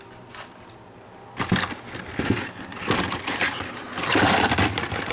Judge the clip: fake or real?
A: real